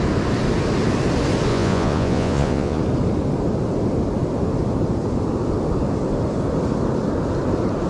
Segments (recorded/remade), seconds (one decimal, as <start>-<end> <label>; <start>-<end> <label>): 0.0-1.5 recorded; 1.5-2.8 remade; 2.8-7.9 recorded